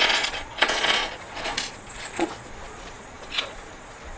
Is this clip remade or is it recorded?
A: remade